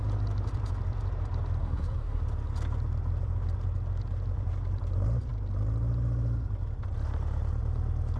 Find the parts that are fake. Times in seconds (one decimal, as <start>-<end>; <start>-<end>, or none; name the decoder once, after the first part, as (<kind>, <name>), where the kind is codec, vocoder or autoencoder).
1.6-2.2 (codec, SNAC)